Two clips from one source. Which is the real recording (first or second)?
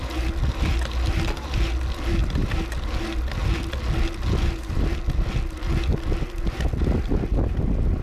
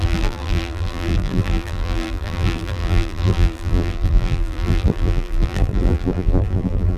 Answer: first